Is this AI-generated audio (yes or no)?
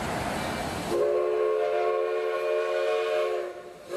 no